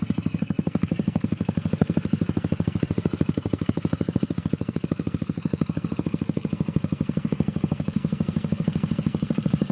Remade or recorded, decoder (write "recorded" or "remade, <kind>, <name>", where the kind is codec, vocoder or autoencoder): remade, codec, SNAC